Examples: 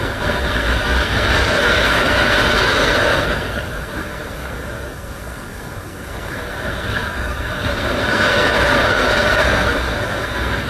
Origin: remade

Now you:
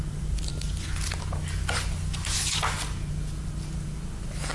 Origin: recorded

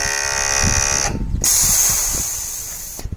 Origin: recorded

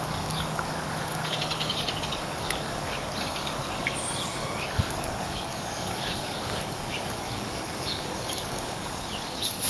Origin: remade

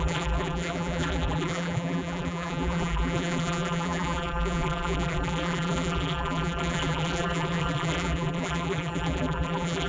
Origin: remade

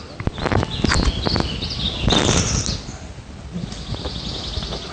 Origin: recorded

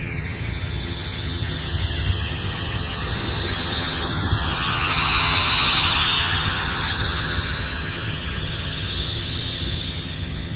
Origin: remade